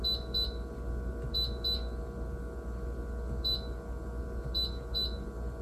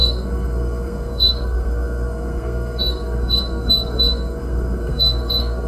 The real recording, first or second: first